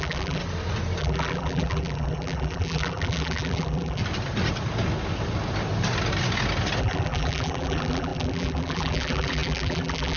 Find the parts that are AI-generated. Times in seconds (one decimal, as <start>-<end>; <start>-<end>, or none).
0.0-0.4; 1.0-4.0; 6.8-10.2